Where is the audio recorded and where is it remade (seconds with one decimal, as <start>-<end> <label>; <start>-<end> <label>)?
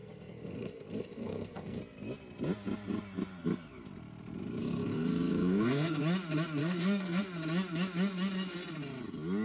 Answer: 0.0-1.8 remade; 1.8-4.6 recorded; 4.6-6.0 remade; 6.0-6.6 recorded; 6.6-7.2 remade; 7.2-9.4 recorded